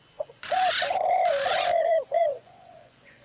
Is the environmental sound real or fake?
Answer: fake